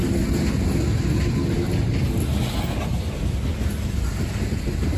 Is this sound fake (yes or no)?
no